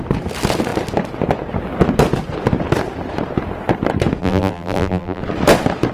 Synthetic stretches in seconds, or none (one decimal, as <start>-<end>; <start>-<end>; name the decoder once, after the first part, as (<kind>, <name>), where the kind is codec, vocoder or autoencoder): 4.2-5.2 (vocoder, BigVGAN v2)